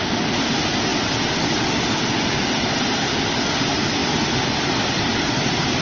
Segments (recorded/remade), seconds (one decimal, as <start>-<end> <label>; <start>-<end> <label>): 0.0-4.0 recorded; 4.0-5.0 remade; 5.0-5.8 recorded